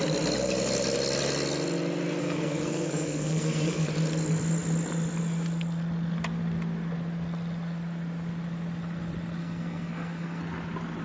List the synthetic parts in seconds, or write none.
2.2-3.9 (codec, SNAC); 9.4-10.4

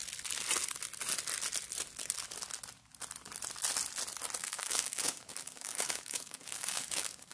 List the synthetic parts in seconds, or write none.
4.4-7.3 (codec, DAC)

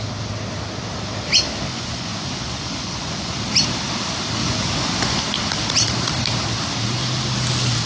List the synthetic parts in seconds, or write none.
1.7-3.3 (vocoder, Vocos); 4.4-5.2

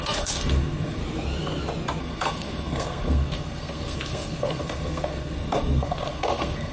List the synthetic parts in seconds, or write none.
0.0-1.0 (codec, SNAC); 2.0-6.7